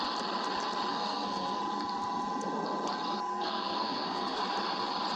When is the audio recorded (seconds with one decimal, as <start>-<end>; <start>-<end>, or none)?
0.0-0.9; 1.6-3.3; 4.4-5.2